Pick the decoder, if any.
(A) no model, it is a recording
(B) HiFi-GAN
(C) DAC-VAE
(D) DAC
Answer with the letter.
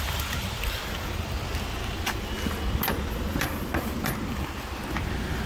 A